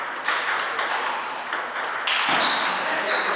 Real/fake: real